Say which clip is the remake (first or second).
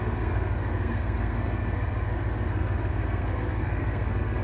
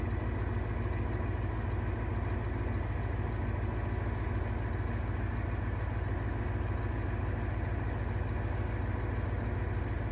first